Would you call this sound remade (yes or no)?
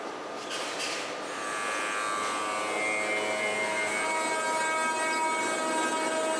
no